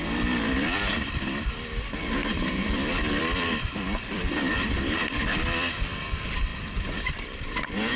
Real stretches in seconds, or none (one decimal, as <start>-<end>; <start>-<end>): none